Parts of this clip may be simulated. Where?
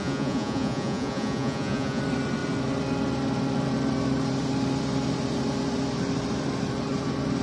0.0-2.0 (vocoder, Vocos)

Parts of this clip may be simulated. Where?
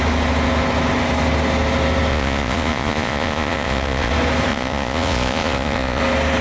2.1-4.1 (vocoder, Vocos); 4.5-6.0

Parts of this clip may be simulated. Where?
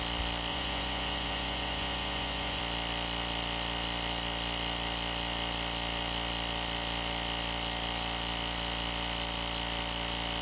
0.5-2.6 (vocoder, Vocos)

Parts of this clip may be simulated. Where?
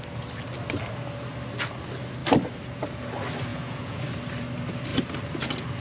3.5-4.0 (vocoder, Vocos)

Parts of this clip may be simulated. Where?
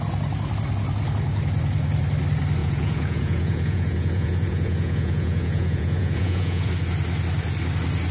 2.6-6.7 (vocoder, Vocos)